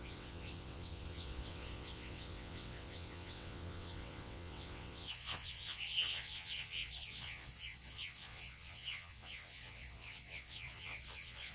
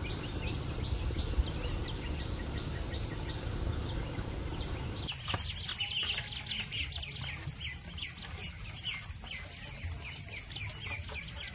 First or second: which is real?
second